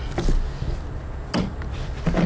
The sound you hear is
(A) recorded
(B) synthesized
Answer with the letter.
A